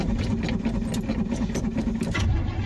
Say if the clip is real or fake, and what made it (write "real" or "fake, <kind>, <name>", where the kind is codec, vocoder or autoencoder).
real